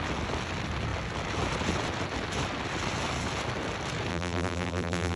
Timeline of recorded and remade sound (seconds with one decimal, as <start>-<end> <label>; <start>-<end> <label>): 0.0-4.1 recorded; 4.1-5.2 remade